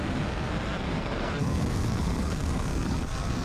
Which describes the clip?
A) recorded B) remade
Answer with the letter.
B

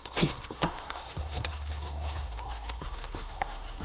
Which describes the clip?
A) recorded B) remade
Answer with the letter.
B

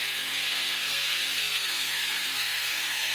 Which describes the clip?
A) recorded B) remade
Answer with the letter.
B